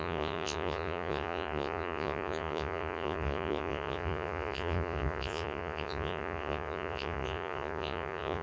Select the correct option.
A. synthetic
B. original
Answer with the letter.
A